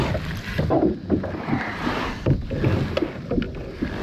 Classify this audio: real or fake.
real